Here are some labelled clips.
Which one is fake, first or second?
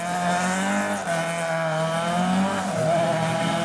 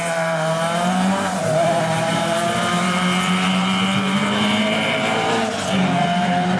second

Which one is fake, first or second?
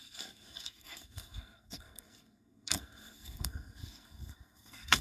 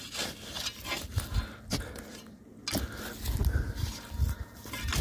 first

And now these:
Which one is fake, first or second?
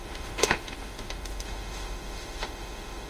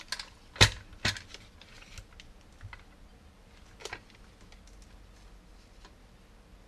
first